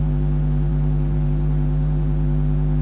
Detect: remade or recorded remade